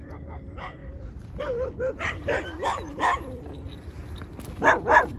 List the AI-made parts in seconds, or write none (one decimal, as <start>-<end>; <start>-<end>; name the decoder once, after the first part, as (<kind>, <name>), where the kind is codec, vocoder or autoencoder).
0.8-1.3 (vocoder, BigVGAN v2); 1.9-2.4